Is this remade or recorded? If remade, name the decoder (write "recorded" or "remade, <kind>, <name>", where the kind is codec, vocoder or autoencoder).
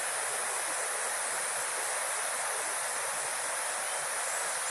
recorded